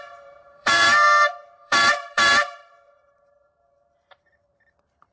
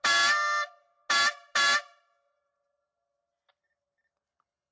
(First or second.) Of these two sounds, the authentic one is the second